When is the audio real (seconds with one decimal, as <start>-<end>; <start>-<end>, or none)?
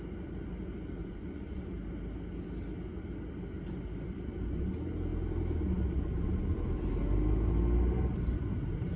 0.0-1.0; 1.6-9.0